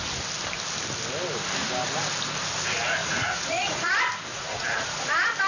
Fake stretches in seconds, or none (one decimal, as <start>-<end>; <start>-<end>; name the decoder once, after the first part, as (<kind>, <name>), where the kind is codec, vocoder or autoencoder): 3.0-3.9 (vocoder, Vocos); 4.3-5.1